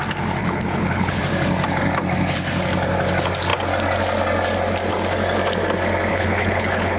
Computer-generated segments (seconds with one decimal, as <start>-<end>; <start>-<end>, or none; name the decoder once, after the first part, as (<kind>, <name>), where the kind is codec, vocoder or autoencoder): 0.4-1.2 (codec, HILCodec); 6.1-7.0